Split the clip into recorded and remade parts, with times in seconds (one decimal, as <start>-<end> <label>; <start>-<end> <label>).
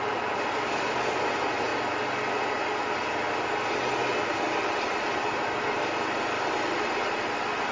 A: 0.0-1.7 remade; 1.7-4.7 recorded; 4.7-7.7 remade